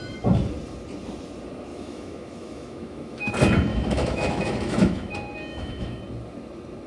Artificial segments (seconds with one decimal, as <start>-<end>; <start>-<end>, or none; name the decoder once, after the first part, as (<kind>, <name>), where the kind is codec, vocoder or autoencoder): 1.7-3.3 (autoencoder, DAC-VAE); 3.7-5.1; 5.5-6.0